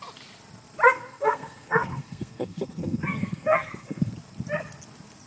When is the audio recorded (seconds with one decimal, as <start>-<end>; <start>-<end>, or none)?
0.0-0.9; 4.1-5.3